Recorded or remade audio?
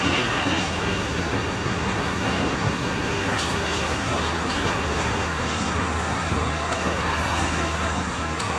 remade